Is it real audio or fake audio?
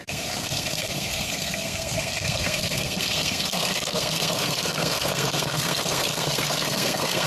fake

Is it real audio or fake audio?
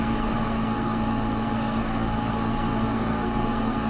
fake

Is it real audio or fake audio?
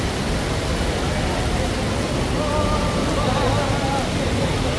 real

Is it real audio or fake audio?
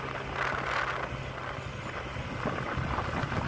real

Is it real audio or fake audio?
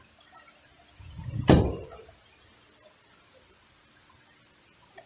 real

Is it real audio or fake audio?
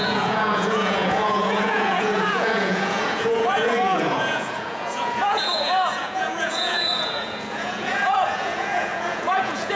fake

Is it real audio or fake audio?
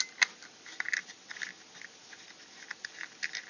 real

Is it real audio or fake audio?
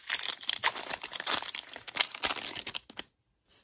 real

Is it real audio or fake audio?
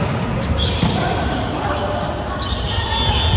real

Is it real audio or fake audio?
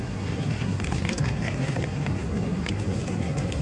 fake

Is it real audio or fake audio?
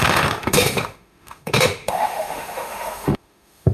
fake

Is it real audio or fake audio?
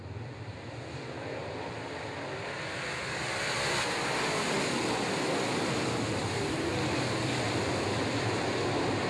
fake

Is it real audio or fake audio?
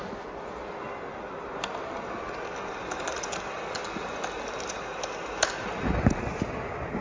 real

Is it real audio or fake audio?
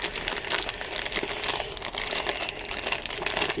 real